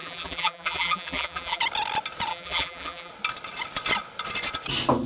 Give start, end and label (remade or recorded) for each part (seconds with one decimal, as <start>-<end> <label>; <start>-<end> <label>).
0.0-1.6 remade; 1.6-2.3 recorded; 2.3-3.1 remade; 3.1-5.1 recorded